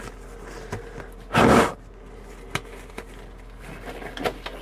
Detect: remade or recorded recorded